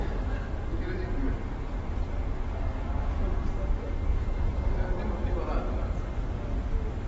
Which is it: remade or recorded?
recorded